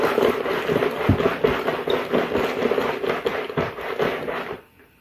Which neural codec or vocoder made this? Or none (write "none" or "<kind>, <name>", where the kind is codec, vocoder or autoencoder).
none